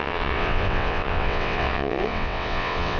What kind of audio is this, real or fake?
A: fake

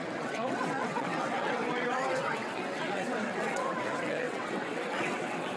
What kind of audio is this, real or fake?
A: fake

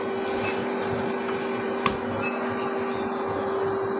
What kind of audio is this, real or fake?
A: real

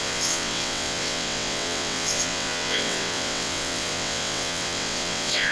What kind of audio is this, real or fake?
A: fake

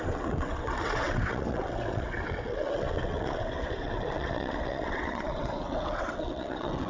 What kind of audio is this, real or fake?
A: fake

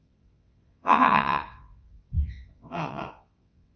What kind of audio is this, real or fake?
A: fake